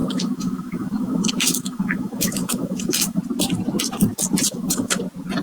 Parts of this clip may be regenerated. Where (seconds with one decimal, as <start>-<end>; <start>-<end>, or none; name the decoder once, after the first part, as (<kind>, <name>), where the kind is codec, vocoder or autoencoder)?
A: 0.0-3.2 (autoencoder, DAC-VAE); 4.5-5.0